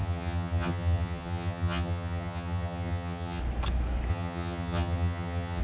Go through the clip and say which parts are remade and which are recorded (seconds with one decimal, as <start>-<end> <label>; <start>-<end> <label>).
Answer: 0.0-3.4 remade; 3.4-4.1 recorded; 4.1-5.6 remade